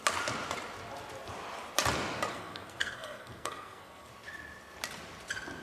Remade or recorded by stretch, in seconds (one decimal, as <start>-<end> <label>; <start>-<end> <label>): 0.0-2.3 recorded; 2.3-4.1 remade; 4.1-5.6 recorded